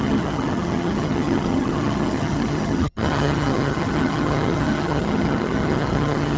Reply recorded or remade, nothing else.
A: remade